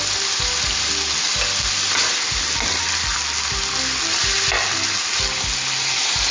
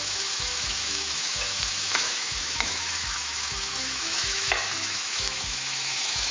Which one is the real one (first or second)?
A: first